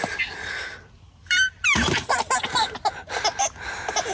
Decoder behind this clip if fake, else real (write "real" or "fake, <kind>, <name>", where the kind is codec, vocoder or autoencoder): real